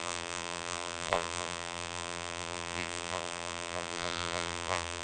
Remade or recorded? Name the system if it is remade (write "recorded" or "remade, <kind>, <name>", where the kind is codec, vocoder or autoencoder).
remade, vocoder, BigVGAN v2